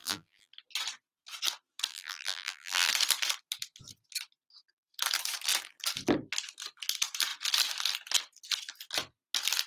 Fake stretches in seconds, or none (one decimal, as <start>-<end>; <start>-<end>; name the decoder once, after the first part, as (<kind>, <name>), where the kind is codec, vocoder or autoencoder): 0.0-0.5 (vocoder, BigVGAN v2); 1.9-2.9